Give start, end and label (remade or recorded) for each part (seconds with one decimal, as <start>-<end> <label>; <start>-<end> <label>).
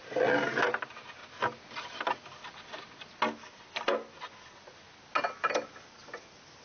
0.0-6.6 recorded